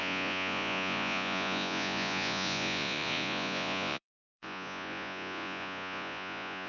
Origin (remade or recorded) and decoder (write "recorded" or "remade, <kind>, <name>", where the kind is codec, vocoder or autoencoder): remade, vocoder, Vocos